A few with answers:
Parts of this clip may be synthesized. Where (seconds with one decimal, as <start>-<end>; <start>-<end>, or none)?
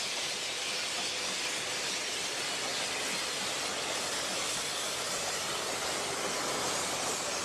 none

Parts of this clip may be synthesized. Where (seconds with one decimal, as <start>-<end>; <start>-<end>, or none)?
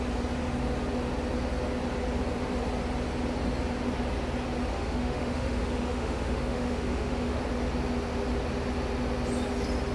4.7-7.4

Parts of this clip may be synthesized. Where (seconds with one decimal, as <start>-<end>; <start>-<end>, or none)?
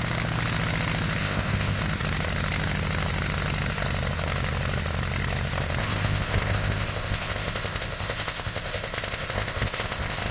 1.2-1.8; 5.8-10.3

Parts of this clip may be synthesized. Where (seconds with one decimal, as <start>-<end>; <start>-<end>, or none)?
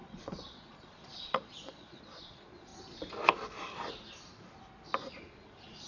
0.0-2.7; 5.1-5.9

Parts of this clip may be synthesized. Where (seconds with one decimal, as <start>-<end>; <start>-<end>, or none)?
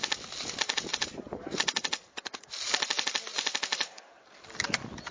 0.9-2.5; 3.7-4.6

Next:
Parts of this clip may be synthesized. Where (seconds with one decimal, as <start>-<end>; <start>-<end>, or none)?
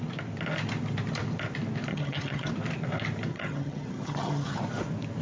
1.9-2.5; 3.3-4.6